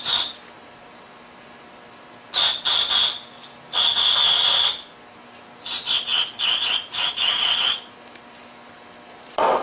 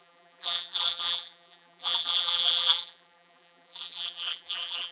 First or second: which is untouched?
first